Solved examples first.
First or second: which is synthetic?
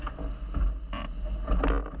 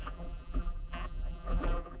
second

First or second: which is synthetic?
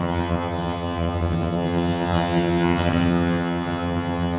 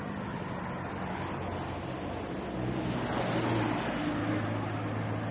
first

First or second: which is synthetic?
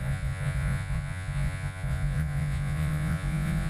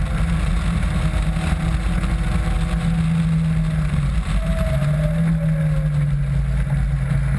first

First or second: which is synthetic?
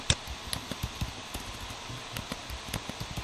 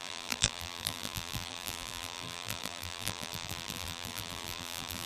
second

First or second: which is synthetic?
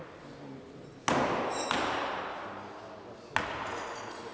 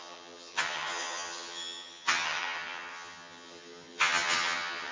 second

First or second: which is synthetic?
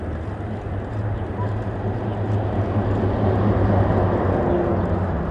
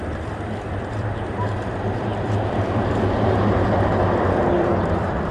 second